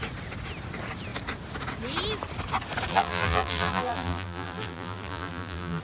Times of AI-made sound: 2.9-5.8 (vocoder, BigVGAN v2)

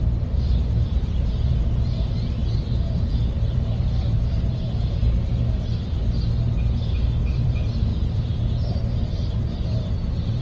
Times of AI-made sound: 0.0-5.0 (vocoder, BigVGAN v2); 7.3-10.4

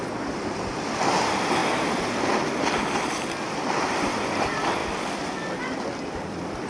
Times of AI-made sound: 0.0-4.8 (vocoder, BigVGAN v2); 6.1-6.7

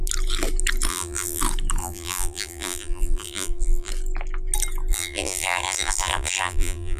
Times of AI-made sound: 0.9-1.4 (vocoder, BigVGAN v2); 1.8-3.9; 4.9-7.0

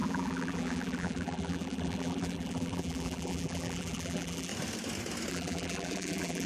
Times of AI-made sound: 0.0-4.5 (vocoder, BigVGAN v2); 5.3-6.5